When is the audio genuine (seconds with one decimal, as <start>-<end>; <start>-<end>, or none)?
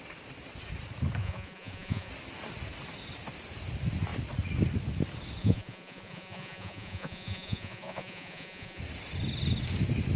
0.0-1.2; 2.1-5.4; 8.8-10.2